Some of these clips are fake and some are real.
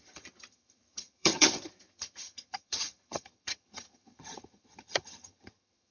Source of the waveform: fake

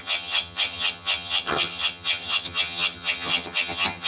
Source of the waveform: fake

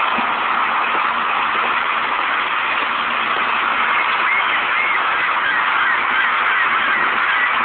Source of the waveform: real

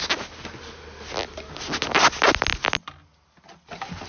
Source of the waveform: real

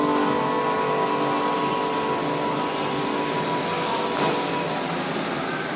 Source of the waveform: real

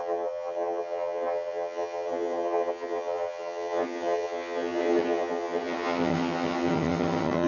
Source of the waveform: fake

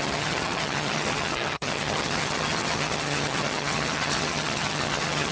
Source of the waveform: fake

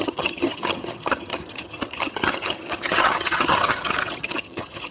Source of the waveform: fake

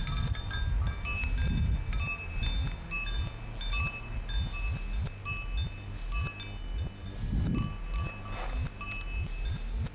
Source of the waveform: real